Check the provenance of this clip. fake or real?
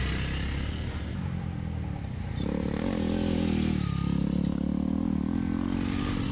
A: real